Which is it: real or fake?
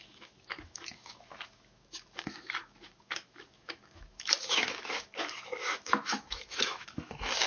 fake